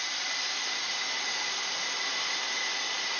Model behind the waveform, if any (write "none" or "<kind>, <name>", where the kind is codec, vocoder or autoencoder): none